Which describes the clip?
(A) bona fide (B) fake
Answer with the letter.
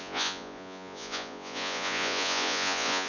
B